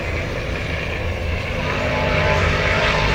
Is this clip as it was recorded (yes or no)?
no